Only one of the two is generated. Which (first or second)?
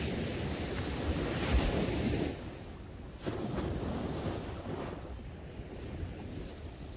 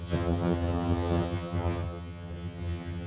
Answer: second